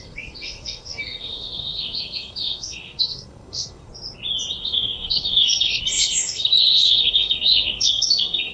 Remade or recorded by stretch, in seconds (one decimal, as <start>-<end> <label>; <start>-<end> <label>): 0.0-3.9 remade; 3.9-4.6 recorded; 4.6-8.5 remade